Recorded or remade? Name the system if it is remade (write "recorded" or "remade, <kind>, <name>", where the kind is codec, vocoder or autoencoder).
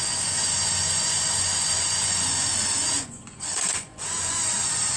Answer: remade, vocoder, Vocos